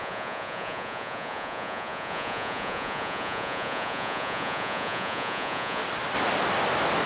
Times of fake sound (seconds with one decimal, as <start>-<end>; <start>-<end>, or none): 0.0-5.8